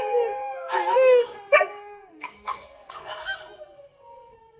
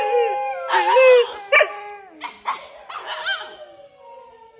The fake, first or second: first